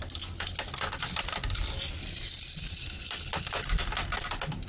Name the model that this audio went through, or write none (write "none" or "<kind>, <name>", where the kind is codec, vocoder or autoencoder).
none